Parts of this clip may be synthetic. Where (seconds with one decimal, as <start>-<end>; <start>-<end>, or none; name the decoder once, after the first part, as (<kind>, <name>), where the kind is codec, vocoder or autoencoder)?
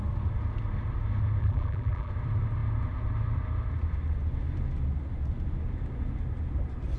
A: 1.4-2.1 (vocoder, BigVGAN v2)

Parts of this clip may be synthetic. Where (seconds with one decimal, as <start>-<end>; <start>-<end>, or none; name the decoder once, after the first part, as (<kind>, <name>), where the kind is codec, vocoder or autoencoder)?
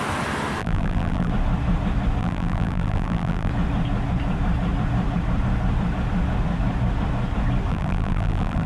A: 0.6-1.3 (vocoder, BigVGAN v2); 2.2-3.5; 7.7-8.7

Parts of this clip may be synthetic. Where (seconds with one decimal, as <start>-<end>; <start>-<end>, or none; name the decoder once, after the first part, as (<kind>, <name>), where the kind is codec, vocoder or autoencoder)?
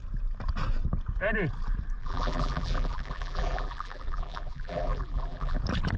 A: 2.0-5.6 (vocoder, BigVGAN v2)